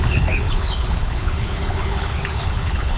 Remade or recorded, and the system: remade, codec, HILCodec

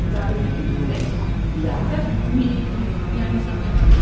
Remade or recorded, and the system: recorded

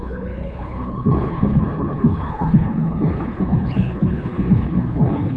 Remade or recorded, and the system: remade, codec, HILCodec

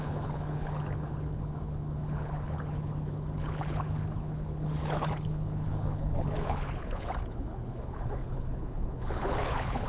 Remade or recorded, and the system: remade, codec, HILCodec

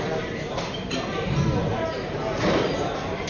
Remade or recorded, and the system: recorded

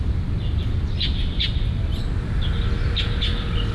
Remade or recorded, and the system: recorded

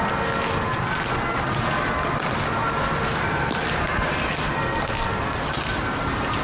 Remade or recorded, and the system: recorded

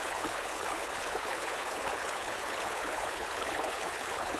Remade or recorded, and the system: remade, codec, HILCodec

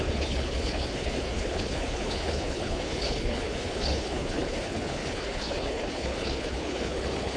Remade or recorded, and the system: remade, codec, HILCodec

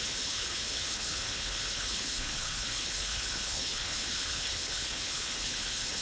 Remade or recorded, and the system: remade, codec, HILCodec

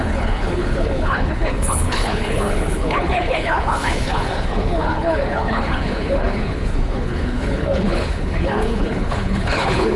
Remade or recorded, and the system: remade, codec, HILCodec